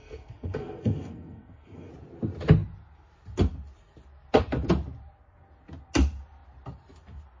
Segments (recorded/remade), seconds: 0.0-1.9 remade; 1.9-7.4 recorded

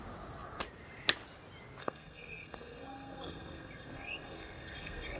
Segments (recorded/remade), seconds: 0.0-1.8 recorded; 1.8-5.2 remade

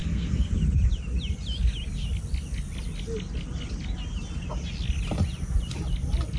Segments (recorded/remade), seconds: 0.0-0.5 remade; 0.5-6.4 recorded

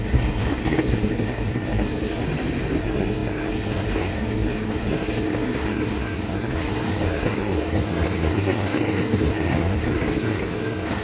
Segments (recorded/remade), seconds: 0.0-2.2 remade; 2.2-2.8 recorded; 2.8-11.0 remade

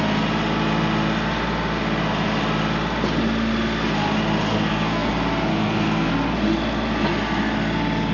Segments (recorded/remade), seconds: 0.0-4.5 recorded; 4.5-5.1 remade; 5.1-5.5 recorded; 5.5-6.1 remade; 6.1-8.1 recorded

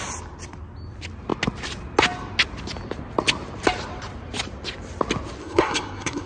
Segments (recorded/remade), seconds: 0.0-5.4 recorded; 5.4-6.3 remade

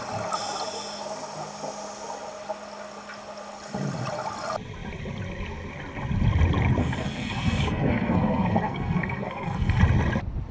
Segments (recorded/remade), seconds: 0.0-6.8 recorded; 6.8-9.8 remade; 9.8-10.5 recorded

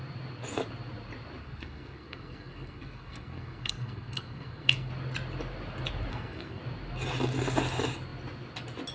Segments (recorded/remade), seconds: 0.0-1.4 recorded; 1.4-4.9 remade; 4.9-6.1 recorded; 6.1-6.6 remade; 6.6-8.9 recorded